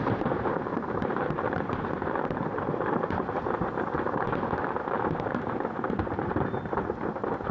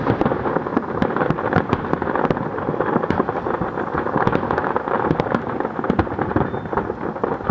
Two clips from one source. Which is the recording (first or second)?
second